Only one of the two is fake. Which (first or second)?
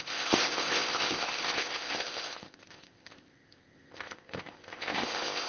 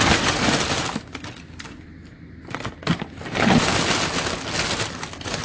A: first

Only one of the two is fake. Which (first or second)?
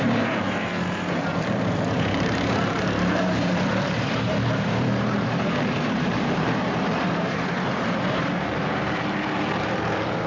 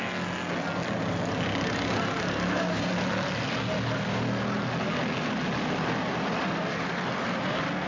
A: first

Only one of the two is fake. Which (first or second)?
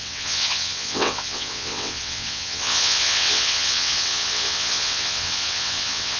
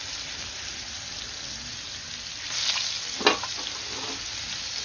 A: first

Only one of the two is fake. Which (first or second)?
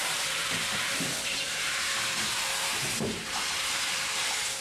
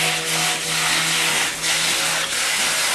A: first